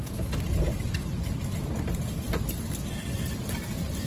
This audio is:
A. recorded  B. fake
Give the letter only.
A